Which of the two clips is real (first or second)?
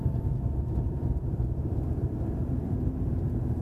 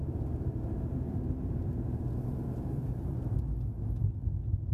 second